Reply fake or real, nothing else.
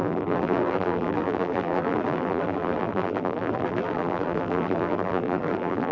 fake